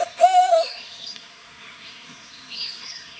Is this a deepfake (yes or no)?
yes